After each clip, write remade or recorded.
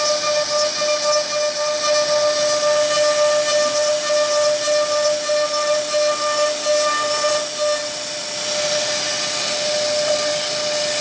recorded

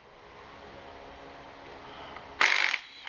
recorded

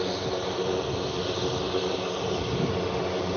recorded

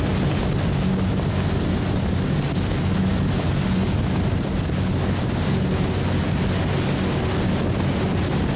recorded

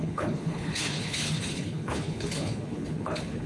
remade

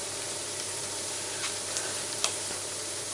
remade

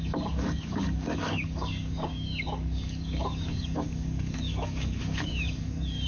remade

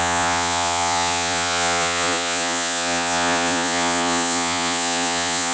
remade